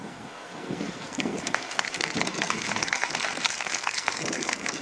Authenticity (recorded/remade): remade